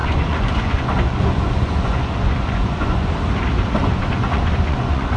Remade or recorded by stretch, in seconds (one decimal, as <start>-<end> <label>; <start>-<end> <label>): 0.0-3.1 remade; 3.1-3.8 recorded; 3.8-5.2 remade